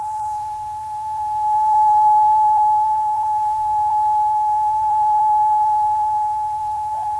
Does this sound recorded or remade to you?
remade